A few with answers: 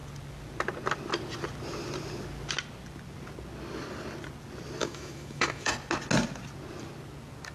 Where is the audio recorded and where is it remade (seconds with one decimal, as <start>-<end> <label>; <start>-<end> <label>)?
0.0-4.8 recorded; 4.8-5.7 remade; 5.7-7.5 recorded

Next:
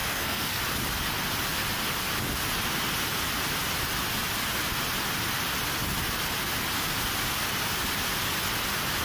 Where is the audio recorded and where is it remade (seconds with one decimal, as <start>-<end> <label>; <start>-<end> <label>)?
0.0-0.6 remade; 0.6-9.0 recorded

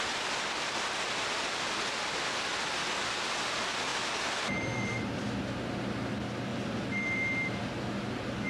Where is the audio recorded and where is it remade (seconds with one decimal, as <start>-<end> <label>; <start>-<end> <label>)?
0.0-3.9 recorded; 3.9-5.4 remade; 5.4-6.5 recorded; 6.5-7.7 remade; 7.7-8.5 recorded

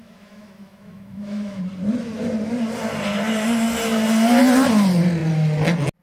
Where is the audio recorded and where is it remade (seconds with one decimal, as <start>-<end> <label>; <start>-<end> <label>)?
0.0-1.6 remade; 1.6-6.0 recorded

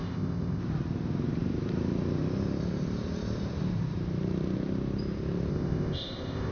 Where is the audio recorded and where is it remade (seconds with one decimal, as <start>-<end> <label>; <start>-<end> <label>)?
0.0-0.6 remade; 0.6-5.5 recorded; 5.5-6.5 remade

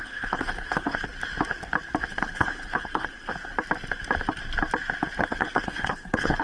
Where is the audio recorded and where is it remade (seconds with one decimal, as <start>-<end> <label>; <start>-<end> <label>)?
0.0-1.1 remade; 1.1-2.1 recorded; 2.1-3.3 remade; 3.3-5.2 recorded; 5.2-6.4 remade

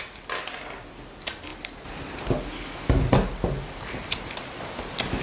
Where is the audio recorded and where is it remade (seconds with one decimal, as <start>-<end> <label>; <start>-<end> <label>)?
0.0-5.2 recorded